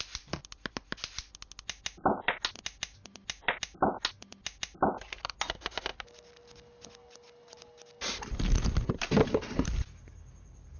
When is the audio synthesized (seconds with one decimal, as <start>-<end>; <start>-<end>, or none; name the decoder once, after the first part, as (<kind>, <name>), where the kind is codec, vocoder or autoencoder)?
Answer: none